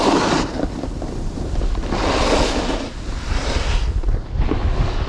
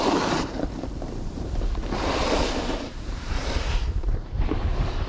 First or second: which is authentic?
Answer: first